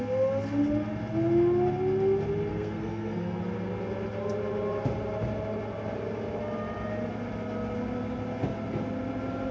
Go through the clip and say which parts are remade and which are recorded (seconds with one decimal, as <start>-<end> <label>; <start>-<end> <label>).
0.0-2.5 recorded; 2.5-3.4 remade; 3.4-9.5 recorded